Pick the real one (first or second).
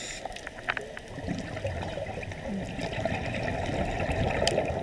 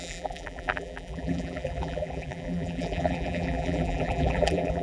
first